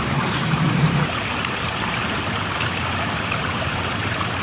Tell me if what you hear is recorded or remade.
remade